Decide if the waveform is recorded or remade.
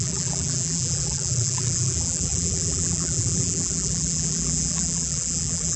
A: remade